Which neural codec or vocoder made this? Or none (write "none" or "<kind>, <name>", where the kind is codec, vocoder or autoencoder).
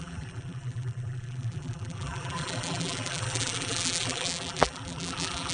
vocoder, BigVGAN v2